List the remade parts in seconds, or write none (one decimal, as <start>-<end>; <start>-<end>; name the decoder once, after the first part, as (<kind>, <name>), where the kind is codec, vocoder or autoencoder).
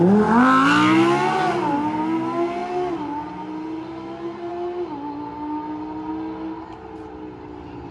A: none